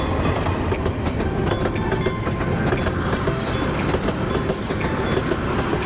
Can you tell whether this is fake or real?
real